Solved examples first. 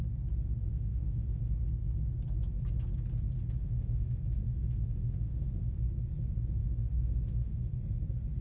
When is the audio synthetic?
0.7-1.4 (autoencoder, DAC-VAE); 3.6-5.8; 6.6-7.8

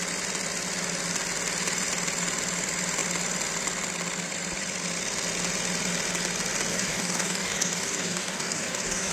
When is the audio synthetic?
6.7-9.1 (codec, DAC)

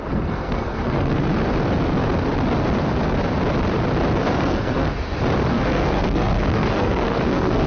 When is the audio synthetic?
0.0-1.3 (codec, SNAC); 4.2-4.9; 5.5-7.7

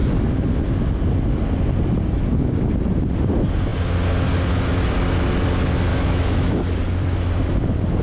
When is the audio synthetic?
5.9-6.5 (autoencoder, DAC-VAE)

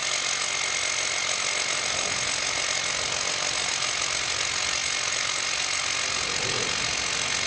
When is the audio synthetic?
none

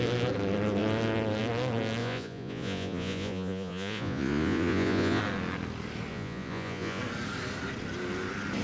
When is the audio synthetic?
2.0-5.2 (vocoder, Vocos); 6.1-7.0